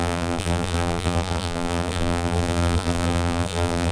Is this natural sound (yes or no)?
no